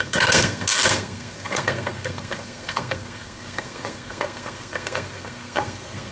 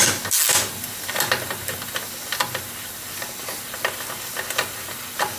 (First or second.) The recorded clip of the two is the second